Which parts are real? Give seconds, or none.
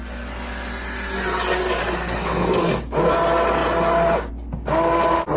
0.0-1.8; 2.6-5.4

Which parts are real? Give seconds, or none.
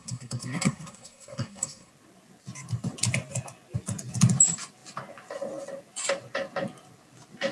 1.9-7.5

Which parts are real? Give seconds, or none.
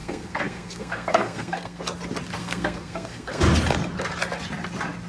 1.8-2.4; 3.4-5.1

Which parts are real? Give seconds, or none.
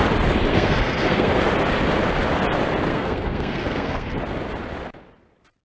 0.0-0.5; 1.4-2.9; 4.2-5.7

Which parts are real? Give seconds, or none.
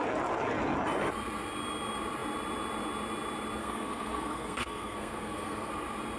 0.0-3.6; 5.7-6.2